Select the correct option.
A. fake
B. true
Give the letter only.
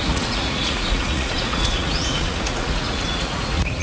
A